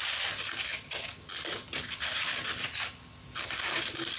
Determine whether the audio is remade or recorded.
recorded